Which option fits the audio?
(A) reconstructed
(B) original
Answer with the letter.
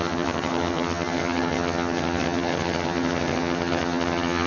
A